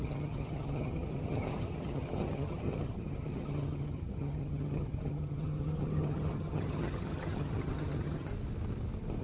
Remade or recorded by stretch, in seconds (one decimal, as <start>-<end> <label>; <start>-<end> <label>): 0.0-8.3 remade; 8.3-9.2 recorded